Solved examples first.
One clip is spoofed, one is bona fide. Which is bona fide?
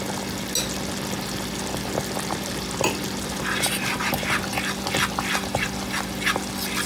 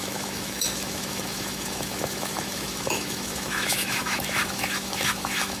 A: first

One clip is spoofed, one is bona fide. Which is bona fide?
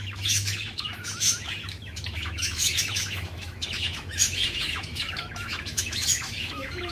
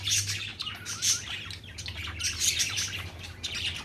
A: second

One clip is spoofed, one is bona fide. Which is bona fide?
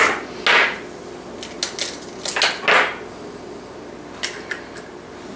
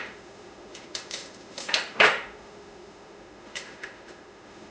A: first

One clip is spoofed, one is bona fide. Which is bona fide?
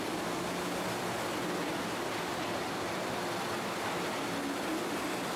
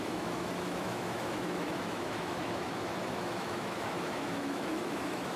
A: first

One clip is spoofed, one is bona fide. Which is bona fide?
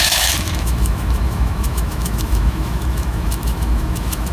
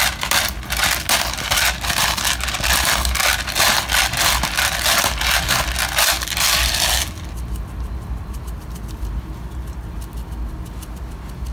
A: second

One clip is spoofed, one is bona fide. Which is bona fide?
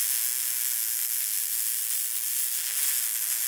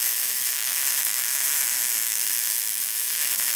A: first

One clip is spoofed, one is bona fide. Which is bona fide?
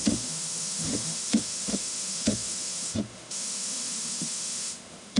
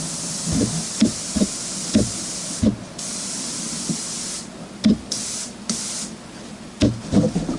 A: second